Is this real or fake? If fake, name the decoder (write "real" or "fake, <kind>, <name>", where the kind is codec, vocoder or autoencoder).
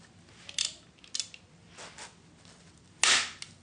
real